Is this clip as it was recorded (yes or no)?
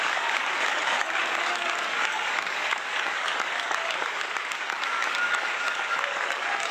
no